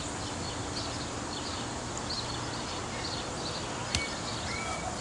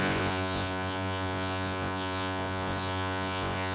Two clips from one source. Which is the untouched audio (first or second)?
first